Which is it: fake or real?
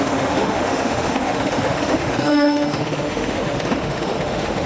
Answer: fake